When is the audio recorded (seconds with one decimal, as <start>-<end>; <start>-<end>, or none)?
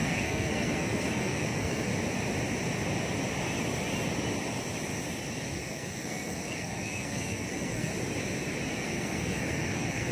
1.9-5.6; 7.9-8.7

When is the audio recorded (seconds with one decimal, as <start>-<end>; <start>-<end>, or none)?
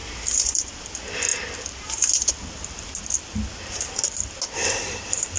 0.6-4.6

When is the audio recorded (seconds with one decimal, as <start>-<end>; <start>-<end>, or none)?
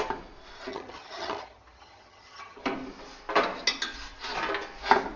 0.0-0.7; 2.6-5.2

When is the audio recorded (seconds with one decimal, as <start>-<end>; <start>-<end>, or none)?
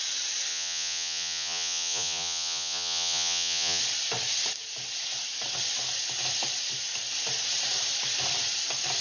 0.0-0.5; 3.8-9.0